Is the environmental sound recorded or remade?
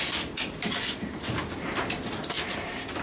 recorded